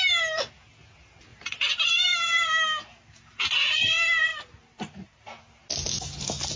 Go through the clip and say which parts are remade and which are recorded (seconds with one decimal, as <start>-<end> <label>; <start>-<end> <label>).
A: 0.0-1.3 recorded; 1.3-2.5 remade; 2.5-4.3 recorded; 4.3-5.2 remade; 5.2-6.6 recorded